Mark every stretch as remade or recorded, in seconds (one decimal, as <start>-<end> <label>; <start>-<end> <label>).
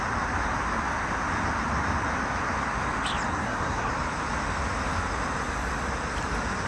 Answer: 0.0-3.3 recorded; 3.3-3.9 remade; 3.9-6.7 recorded